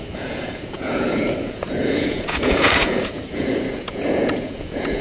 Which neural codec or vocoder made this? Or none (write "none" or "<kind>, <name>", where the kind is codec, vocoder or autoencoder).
vocoder, Vocos